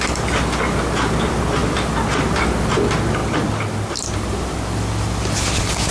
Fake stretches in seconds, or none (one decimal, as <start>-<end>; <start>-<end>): 3.2-5.9

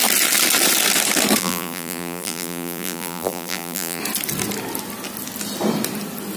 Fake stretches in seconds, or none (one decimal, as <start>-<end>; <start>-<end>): 1.4-4.0

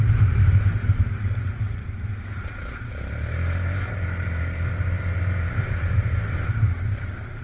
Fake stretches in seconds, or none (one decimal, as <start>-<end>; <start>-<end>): 0.0-7.4